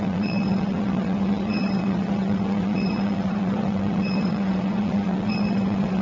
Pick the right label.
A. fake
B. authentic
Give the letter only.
A